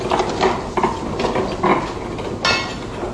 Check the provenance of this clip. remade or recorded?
recorded